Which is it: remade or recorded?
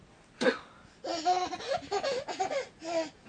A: recorded